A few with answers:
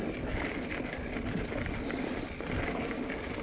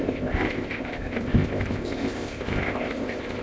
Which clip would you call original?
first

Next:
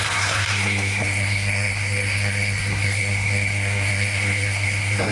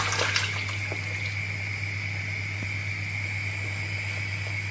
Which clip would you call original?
second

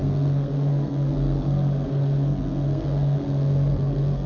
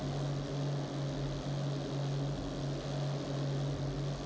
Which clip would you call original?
second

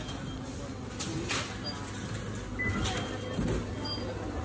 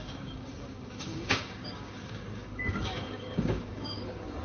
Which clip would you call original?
first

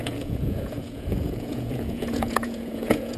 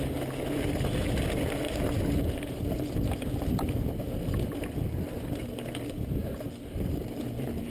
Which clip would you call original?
second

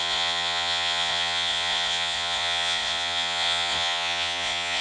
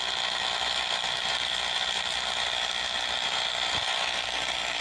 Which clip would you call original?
second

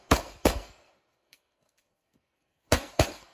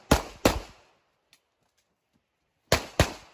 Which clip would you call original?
second